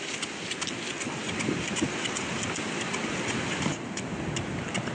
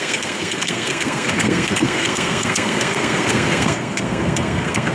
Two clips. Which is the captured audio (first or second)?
first